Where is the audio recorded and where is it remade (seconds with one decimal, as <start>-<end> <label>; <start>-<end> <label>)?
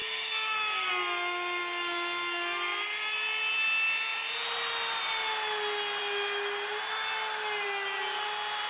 0.0-0.9 remade; 0.9-8.7 recorded